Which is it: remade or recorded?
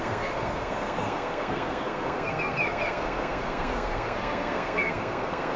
remade